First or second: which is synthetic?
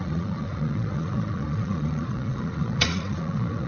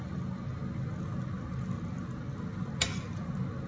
first